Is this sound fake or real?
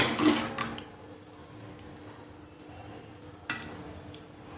real